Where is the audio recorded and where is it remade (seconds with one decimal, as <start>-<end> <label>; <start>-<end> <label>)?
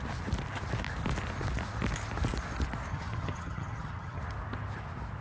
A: 0.0-2.9 recorded; 2.9-4.2 remade; 4.2-5.2 recorded